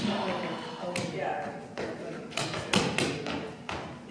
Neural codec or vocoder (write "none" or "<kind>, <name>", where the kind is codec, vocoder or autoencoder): none